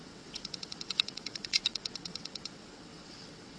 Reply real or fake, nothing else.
fake